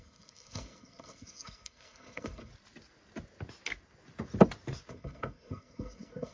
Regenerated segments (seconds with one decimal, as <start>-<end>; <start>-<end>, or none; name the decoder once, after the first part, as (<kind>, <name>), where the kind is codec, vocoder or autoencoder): 0.0-2.5 (codec, SNAC); 4.9-6.3